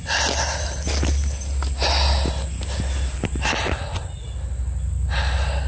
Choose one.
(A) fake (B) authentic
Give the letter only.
B